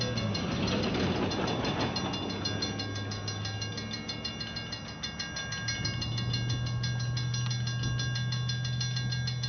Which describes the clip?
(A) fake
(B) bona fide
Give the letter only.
B